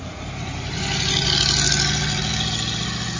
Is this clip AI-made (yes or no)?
no